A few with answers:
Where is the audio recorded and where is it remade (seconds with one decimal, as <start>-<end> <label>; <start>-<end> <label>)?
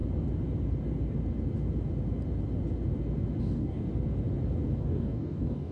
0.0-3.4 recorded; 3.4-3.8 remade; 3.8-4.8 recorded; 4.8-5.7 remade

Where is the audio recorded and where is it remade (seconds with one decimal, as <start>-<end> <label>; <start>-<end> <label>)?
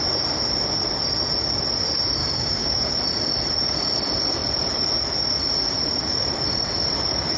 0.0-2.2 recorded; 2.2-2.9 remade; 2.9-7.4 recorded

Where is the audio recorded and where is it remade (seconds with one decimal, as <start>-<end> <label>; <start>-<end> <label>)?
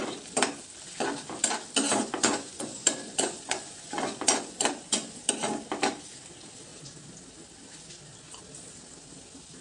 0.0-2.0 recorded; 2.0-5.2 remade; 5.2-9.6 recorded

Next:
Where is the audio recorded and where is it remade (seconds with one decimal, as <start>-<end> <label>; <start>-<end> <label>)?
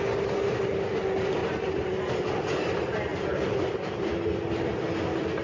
0.0-1.4 recorded; 1.4-2.0 remade; 2.0-5.4 recorded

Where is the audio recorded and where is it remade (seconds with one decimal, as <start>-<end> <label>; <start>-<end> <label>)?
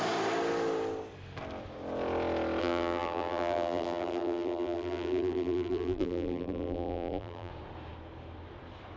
0.0-2.6 recorded; 2.6-7.5 remade; 7.5-9.0 recorded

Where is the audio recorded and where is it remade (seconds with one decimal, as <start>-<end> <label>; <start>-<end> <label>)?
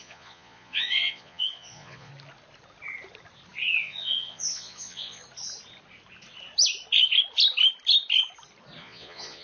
0.0-2.1 remade; 2.1-3.8 recorded; 3.8-5.2 remade; 5.2-8.8 recorded; 8.8-9.4 remade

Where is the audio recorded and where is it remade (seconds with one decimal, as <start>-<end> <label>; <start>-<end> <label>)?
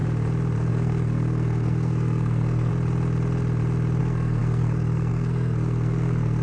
0.0-0.7 recorded; 0.7-2.7 remade; 2.7-4.0 recorded; 4.0-6.4 remade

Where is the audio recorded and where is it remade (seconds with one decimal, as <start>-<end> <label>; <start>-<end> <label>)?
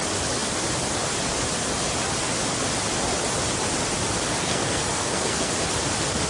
0.0-4.4 recorded; 4.4-5.5 remade; 5.5-6.3 recorded